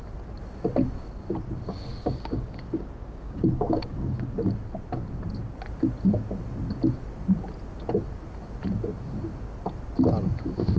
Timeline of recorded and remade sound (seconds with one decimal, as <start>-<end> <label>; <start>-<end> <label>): 0.0-1.9 recorded; 1.9-4.5 remade; 4.5-10.8 recorded

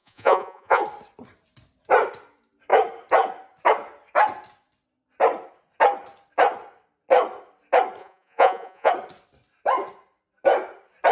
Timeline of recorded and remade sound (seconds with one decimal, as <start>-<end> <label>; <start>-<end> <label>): 0.0-0.8 remade; 0.8-8.0 recorded; 8.0-8.9 remade; 8.9-11.1 recorded

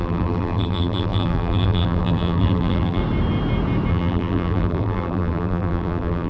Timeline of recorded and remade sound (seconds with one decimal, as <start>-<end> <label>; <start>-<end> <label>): 0.0-3.0 remade; 3.0-3.9 recorded; 3.9-6.3 remade

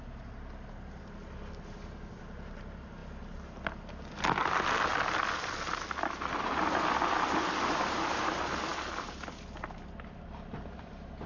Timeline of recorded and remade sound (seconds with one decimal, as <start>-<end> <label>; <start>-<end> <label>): 0.0-11.3 recorded

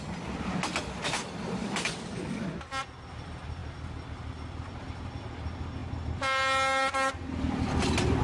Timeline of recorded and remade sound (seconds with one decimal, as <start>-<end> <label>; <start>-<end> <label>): 0.0-1.6 recorded; 1.6-2.8 remade; 2.8-8.2 recorded

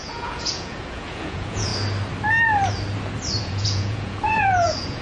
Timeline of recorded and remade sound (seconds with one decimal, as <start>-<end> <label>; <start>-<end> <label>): 0.0-1.7 remade; 1.7-3.4 recorded; 3.4-5.0 remade